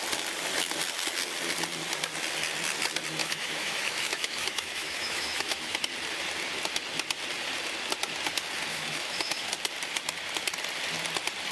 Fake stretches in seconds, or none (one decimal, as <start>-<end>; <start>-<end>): 3.2-5.8; 8.7-9.5